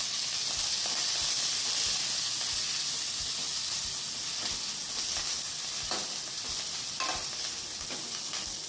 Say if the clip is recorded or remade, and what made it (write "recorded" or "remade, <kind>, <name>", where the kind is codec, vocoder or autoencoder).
recorded